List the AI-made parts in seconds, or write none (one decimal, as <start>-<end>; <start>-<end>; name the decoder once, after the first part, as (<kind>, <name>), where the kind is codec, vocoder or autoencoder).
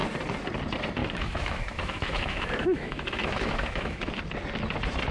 1.0-4.1 (autoencoder, DAC-VAE)